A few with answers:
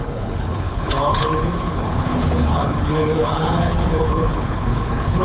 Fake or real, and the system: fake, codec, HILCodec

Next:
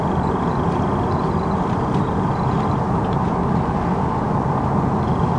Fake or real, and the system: real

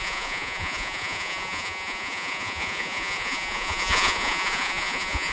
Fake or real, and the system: fake, vocoder, Vocos